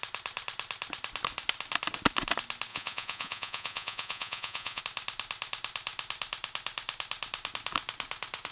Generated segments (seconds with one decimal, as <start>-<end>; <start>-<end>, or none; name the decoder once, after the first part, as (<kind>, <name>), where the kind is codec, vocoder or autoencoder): 2.7-4.8 (vocoder, Vocos)

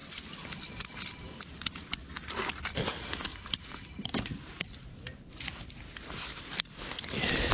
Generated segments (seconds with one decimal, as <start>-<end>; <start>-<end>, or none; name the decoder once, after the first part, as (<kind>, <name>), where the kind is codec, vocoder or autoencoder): 0.0-1.3 (vocoder, BigVGAN v2); 2.0-2.8; 3.3-4.4

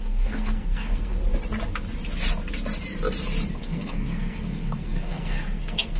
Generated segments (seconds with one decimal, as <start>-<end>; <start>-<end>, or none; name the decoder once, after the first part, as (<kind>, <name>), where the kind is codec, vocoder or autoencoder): 0.0-1.2 (codec, SNAC); 3.6-6.0